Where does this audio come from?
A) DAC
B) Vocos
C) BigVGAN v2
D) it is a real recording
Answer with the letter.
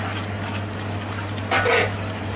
D